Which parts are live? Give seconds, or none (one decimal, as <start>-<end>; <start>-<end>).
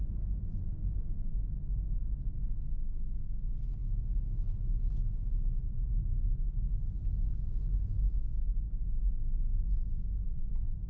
0.0-3.8; 4.8-10.9